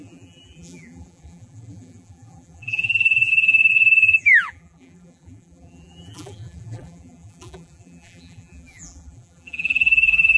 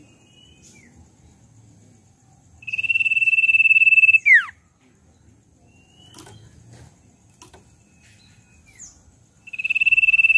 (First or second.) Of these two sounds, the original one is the second